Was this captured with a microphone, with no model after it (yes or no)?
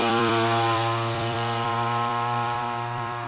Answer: no